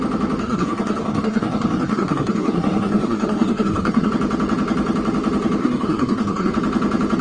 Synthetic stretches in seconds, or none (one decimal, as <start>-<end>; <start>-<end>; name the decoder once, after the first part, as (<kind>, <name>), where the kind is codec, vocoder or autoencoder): 0.4-4.1 (codec, SNAC); 5.6-6.5